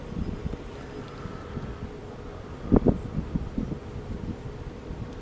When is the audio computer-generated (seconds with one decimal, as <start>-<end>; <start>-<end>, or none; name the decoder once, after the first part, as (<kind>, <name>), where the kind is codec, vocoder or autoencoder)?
none